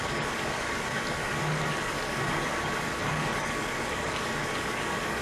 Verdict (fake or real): fake